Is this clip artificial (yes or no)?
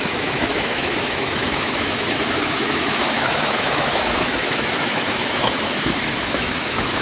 yes